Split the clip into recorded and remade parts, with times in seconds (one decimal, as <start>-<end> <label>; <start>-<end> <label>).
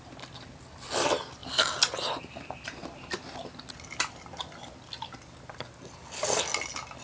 0.0-7.0 recorded